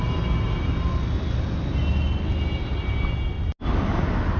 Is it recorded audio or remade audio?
recorded